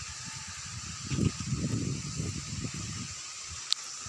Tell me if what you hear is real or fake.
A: real